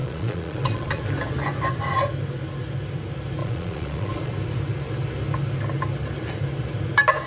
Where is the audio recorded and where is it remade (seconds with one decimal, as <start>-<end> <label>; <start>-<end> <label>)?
0.0-1.0 remade; 1.0-3.4 recorded; 3.4-4.3 remade; 4.3-7.3 recorded